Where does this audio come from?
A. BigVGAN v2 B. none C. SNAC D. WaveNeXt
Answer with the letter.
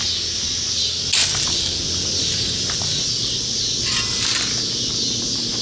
B